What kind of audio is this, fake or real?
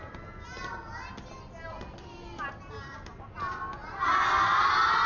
real